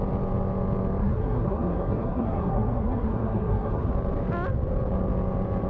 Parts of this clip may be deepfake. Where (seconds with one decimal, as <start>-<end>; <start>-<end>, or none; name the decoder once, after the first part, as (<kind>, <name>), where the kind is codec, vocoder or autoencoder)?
1.0-3.9 (codec, SNAC)